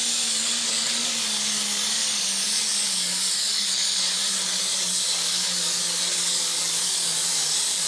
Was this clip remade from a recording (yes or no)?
yes